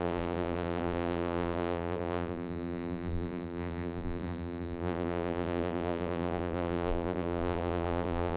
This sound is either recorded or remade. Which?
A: remade